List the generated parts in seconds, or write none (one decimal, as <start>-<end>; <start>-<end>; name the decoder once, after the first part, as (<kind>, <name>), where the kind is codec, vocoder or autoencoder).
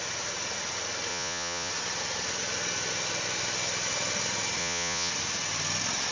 1.1-1.7 (vocoder, Vocos); 4.6-5.1